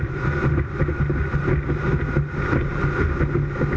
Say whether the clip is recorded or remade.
recorded